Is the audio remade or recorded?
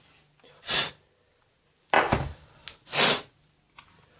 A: recorded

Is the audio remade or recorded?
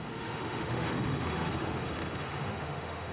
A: remade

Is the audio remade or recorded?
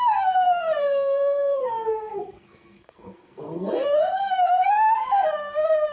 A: remade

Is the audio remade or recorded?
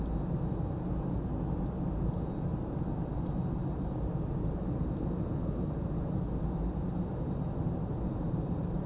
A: recorded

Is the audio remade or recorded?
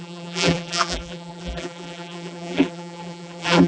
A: remade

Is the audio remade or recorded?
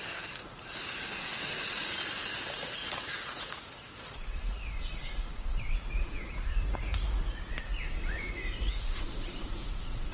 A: remade